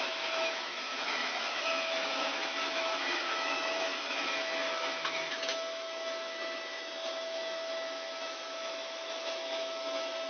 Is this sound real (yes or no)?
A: no